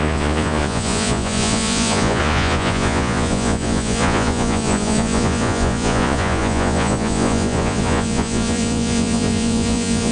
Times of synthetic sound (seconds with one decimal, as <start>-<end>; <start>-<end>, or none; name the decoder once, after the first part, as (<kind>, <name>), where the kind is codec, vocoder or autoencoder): 0.0-10.1 (vocoder, Vocos)